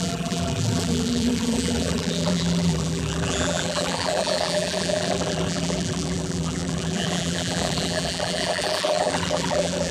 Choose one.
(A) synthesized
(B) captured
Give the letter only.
A